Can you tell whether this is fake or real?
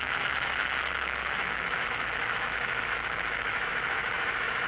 fake